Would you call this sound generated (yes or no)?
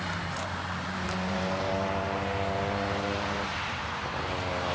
yes